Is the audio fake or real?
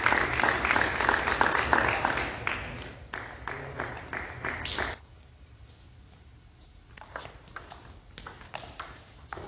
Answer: real